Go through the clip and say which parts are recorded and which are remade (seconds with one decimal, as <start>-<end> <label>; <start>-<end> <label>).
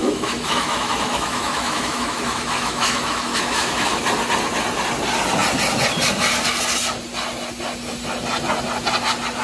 0.0-4.0 remade; 4.0-9.4 recorded